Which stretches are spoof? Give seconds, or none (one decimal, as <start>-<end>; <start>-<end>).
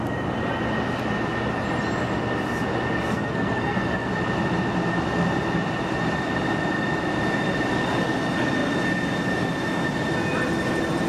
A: 3.1-4.1